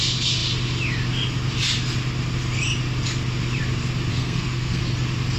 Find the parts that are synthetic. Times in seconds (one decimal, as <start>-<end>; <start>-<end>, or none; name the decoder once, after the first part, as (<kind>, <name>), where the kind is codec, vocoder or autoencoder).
4.1-4.8 (codec, SNAC)